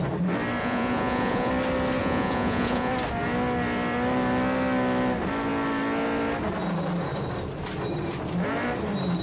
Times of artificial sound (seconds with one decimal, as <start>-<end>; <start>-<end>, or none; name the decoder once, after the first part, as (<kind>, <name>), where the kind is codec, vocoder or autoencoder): 0.6-1.5 (vocoder, Vocos); 2.0-2.9